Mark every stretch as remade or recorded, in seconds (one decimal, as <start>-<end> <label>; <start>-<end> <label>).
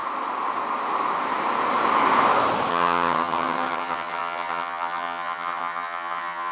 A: 0.0-2.7 recorded; 2.7-6.5 remade